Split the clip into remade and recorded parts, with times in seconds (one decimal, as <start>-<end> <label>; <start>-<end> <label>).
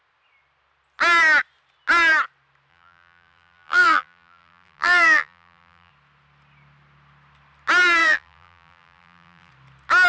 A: 0.0-2.7 recorded; 2.7-5.9 remade; 5.9-8.0 recorded; 8.0-9.5 remade; 9.5-10.1 recorded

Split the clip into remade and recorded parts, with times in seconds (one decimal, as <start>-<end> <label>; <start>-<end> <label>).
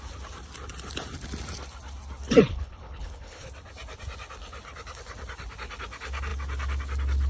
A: 0.0-2.5 recorded; 2.5-3.5 remade; 3.5-7.3 recorded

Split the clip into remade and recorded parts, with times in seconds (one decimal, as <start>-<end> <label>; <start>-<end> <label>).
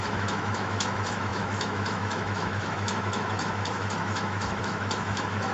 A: 0.0-5.5 remade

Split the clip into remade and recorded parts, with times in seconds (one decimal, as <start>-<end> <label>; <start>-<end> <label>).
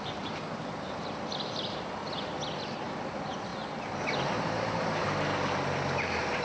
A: 0.0-2.0 remade; 2.0-2.6 recorded; 2.6-5.3 remade; 5.3-6.4 recorded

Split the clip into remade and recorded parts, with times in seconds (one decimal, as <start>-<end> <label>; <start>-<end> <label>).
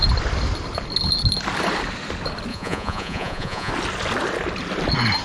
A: 0.0-2.5 recorded; 2.5-3.7 remade; 3.7-5.2 recorded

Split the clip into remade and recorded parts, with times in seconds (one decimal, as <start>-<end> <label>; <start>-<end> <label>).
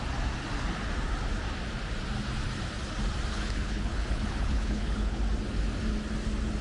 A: 0.0-3.3 recorded; 3.3-5.2 remade; 5.2-6.6 recorded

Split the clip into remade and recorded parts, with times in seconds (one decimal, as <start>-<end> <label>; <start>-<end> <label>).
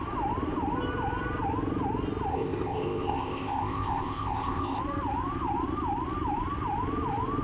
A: 0.0-2.3 recorded; 2.3-4.8 remade; 4.8-7.4 recorded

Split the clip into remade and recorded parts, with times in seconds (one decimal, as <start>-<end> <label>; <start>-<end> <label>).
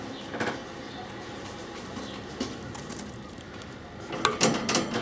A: 0.0-0.6 recorded; 0.6-3.6 remade; 3.6-5.0 recorded